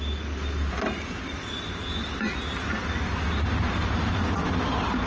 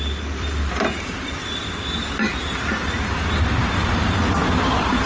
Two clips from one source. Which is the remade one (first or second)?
second